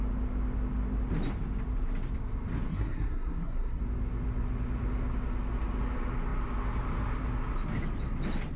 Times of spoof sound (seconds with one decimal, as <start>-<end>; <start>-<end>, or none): 2.7-3.8